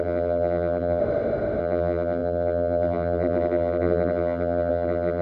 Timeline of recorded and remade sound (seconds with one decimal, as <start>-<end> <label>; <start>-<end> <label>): 0.0-1.0 remade; 1.0-1.6 recorded; 1.6-5.2 remade